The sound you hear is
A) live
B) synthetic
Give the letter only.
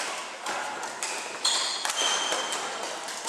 A